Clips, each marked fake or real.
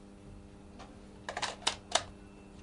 real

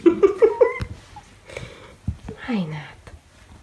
real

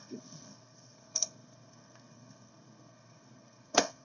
fake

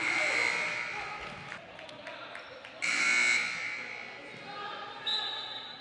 real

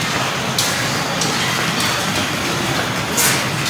real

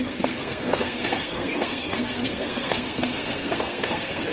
fake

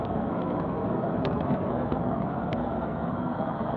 fake